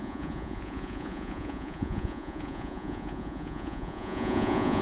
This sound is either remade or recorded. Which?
remade